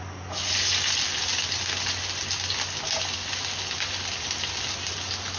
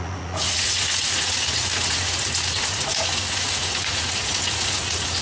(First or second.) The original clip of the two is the first